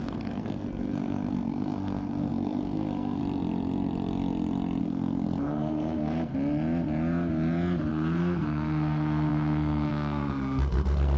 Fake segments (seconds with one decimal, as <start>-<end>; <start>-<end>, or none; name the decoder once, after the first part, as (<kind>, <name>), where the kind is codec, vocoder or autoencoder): 0.0-3.2 (codec, SNAC); 4.8-6.3; 7.9-11.2